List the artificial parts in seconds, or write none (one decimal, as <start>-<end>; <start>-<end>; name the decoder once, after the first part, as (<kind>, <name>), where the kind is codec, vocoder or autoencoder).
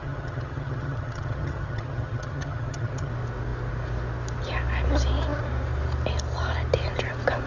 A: 0.0-3.1 (vocoder, HiFi-GAN)